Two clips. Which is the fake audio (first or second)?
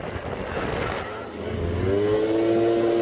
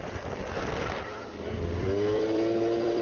second